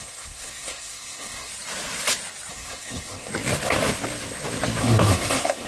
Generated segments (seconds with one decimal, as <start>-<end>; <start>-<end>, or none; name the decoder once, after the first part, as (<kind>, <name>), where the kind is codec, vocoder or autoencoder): 0.0-1.5 (codec, SNAC); 2.5-3.3; 4.8-5.7